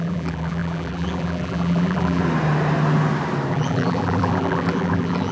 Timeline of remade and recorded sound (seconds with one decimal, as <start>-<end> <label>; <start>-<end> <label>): 0.0-2.2 remade; 2.2-3.5 recorded; 3.5-5.3 remade